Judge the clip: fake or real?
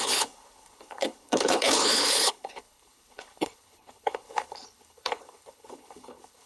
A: fake